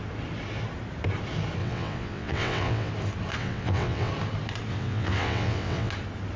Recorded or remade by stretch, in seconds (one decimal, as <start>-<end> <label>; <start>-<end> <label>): 0.0-1.6 recorded; 1.6-2.9 remade; 2.9-3.4 recorded; 3.4-4.1 remade; 4.1-4.7 recorded; 4.7-5.9 remade; 5.9-6.4 recorded